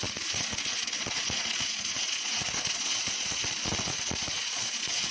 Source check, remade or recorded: remade